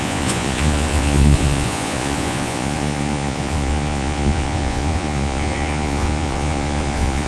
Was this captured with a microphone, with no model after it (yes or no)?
no